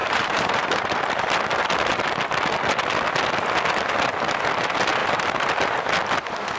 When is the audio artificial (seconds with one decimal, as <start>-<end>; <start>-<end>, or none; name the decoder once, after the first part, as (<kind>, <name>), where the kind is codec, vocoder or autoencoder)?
0.0-1.0 (vocoder, BigVGAN v2); 5.0-5.8